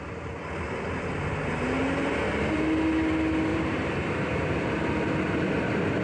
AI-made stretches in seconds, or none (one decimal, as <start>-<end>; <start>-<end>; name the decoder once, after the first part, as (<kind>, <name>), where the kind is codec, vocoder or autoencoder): 1.8-3.1 (vocoder, BigVGAN v2); 3.5-4.5